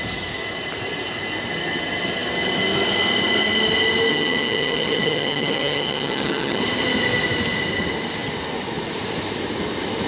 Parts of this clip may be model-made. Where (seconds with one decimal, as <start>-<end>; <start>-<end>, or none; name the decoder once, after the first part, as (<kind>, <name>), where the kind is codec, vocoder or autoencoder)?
4.1-6.6 (vocoder, HiFi-GAN)

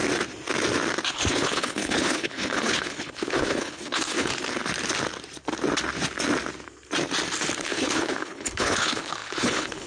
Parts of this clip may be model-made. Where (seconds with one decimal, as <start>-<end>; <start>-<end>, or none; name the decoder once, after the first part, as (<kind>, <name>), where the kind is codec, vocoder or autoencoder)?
1.1-4.3 (codec, HILCodec); 7.6-9.9

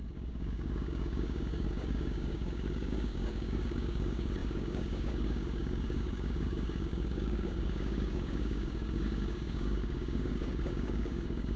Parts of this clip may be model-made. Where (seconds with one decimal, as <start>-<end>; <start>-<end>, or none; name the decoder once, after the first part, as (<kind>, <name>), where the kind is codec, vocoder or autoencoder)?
0.0-11.6 (codec, DAC)

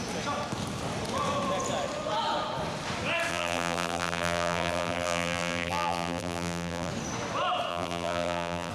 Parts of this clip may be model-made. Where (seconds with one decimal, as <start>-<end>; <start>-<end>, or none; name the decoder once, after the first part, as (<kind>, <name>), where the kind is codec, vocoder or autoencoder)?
3.3-6.9 (vocoder, BigVGAN v2); 7.7-8.7

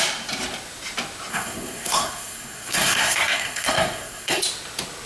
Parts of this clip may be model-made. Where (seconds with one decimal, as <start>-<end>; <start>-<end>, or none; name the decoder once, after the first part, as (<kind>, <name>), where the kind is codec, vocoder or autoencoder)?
1.3-4.4 (codec, SNAC)

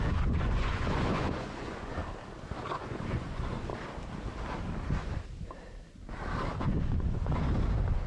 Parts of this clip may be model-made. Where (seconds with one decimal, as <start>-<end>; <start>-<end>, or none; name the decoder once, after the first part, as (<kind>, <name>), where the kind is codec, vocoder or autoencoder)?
0.0-2.0 (vocoder, Vocos); 2.7-3.7; 6.6-7.4

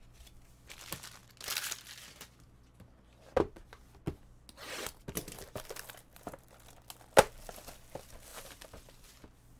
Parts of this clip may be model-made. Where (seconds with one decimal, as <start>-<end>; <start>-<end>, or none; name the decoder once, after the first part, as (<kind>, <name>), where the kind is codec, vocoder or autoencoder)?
8.3-9.1 (vocoder, BigVGAN v2)

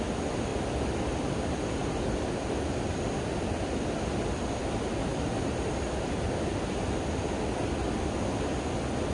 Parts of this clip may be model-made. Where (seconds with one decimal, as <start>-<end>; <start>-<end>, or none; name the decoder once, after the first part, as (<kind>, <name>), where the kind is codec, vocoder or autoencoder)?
none